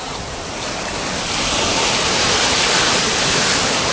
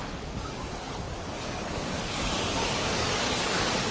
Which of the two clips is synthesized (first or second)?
second